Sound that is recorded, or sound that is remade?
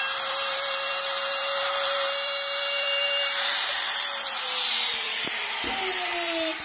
remade